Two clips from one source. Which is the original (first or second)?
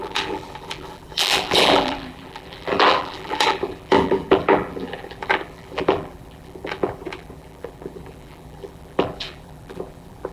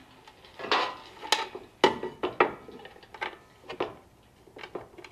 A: second